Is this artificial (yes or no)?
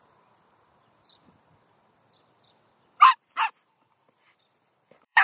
yes